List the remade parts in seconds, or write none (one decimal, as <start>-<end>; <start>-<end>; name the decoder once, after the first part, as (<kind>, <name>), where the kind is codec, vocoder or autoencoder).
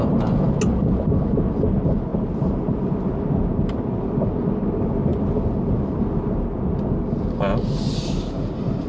none